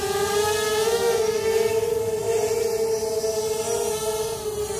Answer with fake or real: real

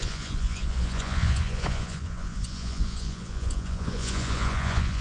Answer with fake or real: fake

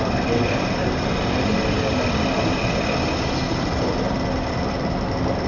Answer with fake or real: real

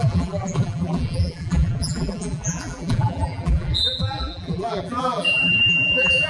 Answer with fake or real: fake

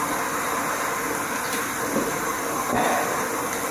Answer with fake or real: real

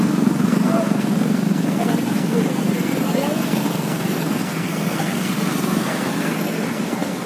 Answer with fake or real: fake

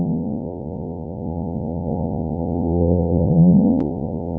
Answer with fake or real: fake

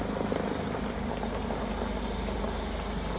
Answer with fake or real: real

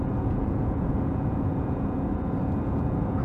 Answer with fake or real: fake